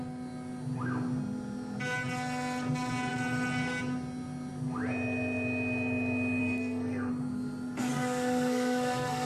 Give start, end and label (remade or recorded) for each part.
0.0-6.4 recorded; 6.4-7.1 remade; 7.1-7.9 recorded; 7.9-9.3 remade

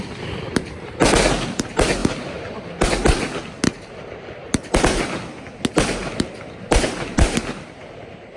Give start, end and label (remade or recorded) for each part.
0.0-8.4 recorded

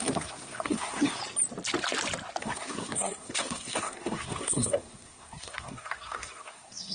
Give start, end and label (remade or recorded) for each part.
0.0-1.2 remade; 1.2-2.4 recorded; 2.4-6.9 remade

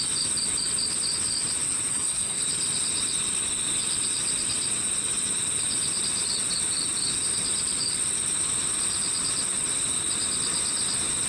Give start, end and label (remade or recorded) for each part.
0.0-1.9 recorded; 1.9-2.4 remade; 2.4-11.3 recorded

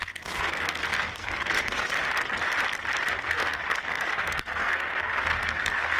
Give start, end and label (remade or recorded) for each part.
0.0-1.9 remade; 1.9-3.1 recorded; 3.1-6.0 remade

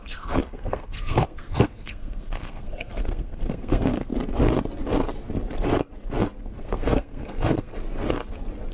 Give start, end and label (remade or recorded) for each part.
0.0-4.1 remade; 4.1-6.6 recorded; 6.6-7.7 remade; 7.7-8.7 recorded

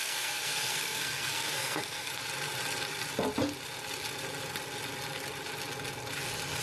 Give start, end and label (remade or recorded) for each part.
0.0-2.2 remade; 2.2-6.6 recorded

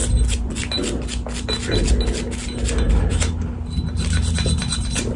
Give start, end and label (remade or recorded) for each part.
0.0-5.2 recorded